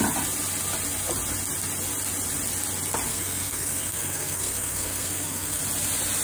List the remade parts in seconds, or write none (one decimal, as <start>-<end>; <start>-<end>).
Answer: 3.1-5.6